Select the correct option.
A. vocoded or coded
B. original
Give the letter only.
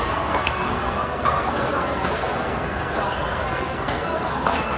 A